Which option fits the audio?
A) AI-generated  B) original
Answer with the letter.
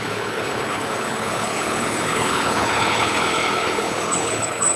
A